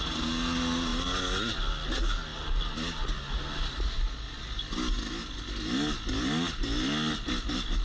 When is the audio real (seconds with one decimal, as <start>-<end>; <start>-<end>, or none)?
0.0-7.8

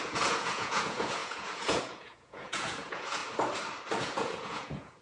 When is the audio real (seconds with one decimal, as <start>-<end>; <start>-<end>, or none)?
3.2-4.0

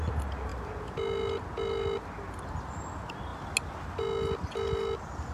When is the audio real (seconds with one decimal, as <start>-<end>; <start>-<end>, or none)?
0.0-5.3

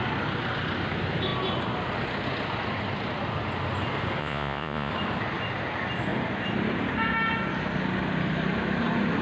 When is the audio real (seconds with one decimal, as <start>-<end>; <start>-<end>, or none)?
0.0-4.2; 4.9-9.2

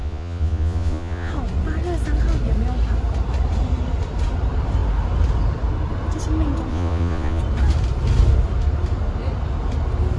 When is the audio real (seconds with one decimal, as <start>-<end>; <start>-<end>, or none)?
1.3-6.7; 7.4-10.2

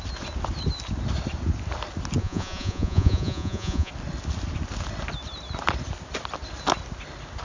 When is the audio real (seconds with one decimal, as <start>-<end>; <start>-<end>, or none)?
0.0-2.2; 3.9-7.4

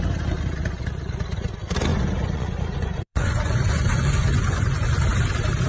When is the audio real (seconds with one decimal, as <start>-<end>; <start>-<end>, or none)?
0.0-1.9; 4.8-5.7